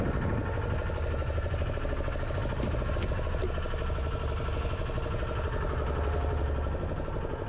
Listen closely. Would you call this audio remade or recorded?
recorded